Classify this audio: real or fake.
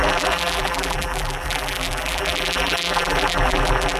fake